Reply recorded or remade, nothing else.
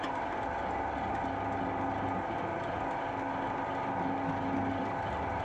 recorded